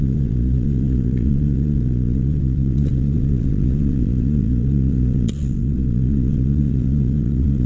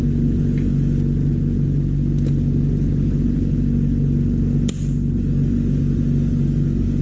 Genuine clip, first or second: second